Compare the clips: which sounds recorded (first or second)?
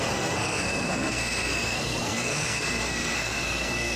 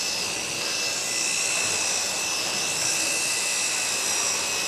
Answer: second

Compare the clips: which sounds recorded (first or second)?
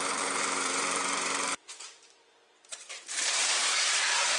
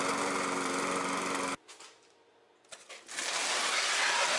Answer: second